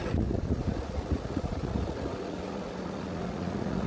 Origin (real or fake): fake